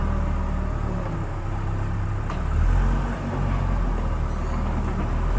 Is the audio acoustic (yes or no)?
yes